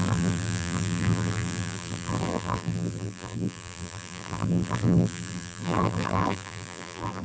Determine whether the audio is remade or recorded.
remade